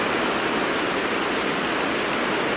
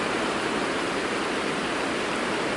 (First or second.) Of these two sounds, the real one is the first